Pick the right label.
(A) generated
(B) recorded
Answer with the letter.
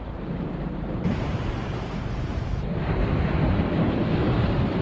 A